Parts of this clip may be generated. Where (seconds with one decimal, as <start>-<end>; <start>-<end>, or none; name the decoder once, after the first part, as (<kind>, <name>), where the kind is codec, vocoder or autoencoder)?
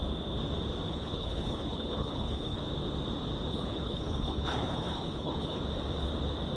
0.9-2.6 (codec, HILCodec); 3.5-5.6